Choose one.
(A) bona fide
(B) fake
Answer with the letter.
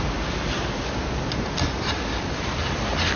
A